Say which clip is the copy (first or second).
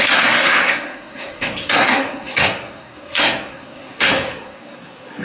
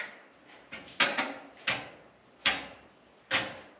first